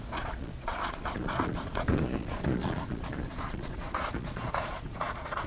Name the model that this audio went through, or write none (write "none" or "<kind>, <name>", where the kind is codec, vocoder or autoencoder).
vocoder, Vocos